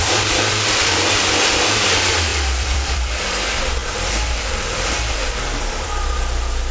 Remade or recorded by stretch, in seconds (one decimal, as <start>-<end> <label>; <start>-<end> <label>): 0.0-6.7 remade